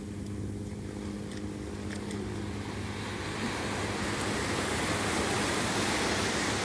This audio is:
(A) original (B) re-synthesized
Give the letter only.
A